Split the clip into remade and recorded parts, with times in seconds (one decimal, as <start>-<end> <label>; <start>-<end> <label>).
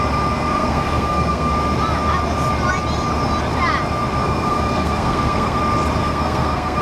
0.0-0.5 recorded; 0.5-1.5 remade; 1.5-4.2 recorded; 4.2-5.6 remade; 5.6-6.0 recorded; 6.0-6.8 remade